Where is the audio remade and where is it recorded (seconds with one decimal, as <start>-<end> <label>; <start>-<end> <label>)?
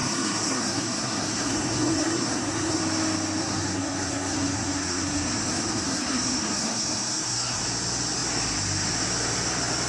0.0-2.8 remade; 2.8-3.4 recorded; 3.4-7.6 remade; 7.6-9.9 recorded